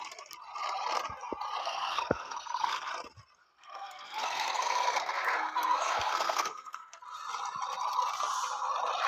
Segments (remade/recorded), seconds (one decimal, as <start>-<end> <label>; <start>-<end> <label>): 0.0-1.6 recorded; 1.6-2.9 remade; 2.9-3.4 recorded; 3.4-7.0 remade; 7.0-9.1 recorded